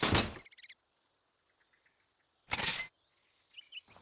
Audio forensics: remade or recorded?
recorded